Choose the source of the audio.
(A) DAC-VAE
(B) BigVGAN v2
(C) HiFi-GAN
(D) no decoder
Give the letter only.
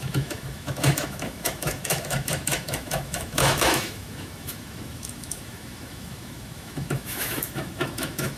A